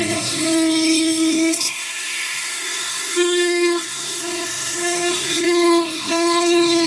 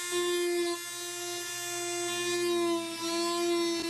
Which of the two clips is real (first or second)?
second